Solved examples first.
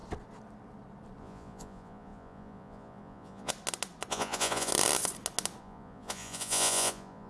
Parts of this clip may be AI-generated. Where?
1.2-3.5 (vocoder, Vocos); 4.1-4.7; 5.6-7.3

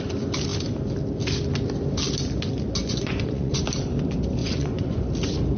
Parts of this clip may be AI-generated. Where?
2.8-3.6 (vocoder, Vocos); 4.4-5.0

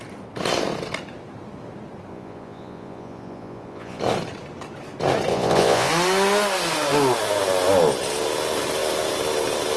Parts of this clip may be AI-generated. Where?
2.1-4.0 (vocoder, Vocos); 5.3-5.9

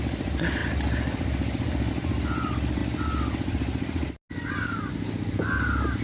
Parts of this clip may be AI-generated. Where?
none